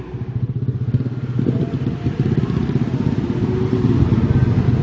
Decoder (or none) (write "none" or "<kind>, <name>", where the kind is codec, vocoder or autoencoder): none